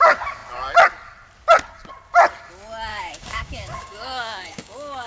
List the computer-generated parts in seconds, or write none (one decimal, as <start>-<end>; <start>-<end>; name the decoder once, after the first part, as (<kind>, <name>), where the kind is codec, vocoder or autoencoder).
2.9-5.1 (codec, DAC)